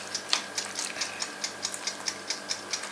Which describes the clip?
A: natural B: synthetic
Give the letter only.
A